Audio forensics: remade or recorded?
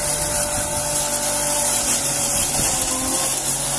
recorded